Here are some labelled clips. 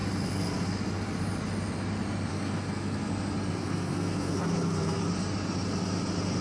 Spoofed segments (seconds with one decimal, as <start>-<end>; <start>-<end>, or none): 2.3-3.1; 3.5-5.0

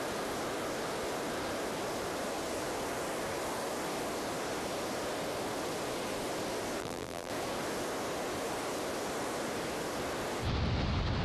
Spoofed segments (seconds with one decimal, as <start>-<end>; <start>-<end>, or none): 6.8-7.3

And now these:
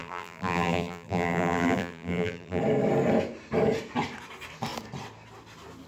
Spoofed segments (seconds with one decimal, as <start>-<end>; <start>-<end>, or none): 0.0-2.6